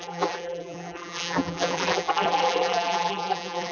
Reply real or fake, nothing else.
fake